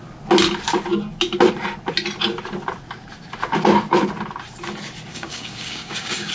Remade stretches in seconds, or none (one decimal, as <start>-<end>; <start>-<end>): 5.1-6.3